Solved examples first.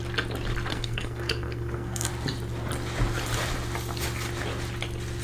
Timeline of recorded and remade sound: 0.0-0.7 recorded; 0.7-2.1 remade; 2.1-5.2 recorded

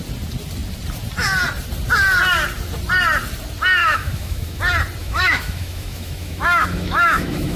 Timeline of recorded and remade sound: 0.0-3.8 recorded; 3.8-4.6 remade; 4.6-5.0 recorded; 5.0-7.6 remade

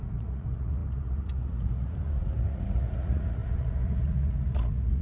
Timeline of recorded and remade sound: 0.0-5.0 remade

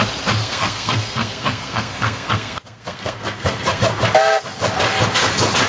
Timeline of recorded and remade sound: 0.0-0.4 recorded; 0.4-3.8 remade; 3.8-5.7 recorded